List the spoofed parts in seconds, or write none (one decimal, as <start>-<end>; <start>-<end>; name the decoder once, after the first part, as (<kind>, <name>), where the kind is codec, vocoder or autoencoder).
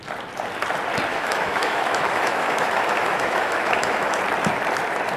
1.1-4.2 (autoencoder, DAC-VAE)